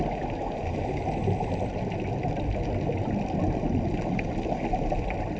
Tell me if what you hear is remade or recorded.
recorded